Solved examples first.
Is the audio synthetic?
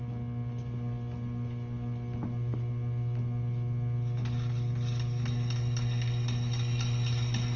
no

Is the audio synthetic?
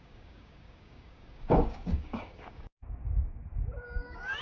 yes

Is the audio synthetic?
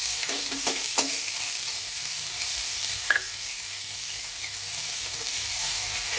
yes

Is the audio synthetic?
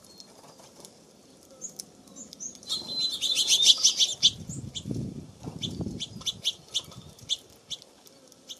no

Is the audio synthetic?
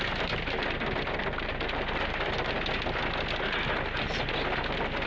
no